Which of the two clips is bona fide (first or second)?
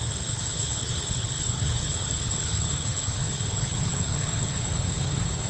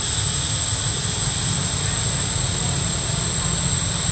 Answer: second